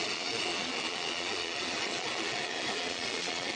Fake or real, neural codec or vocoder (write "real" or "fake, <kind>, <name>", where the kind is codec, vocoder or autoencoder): fake, vocoder, Vocos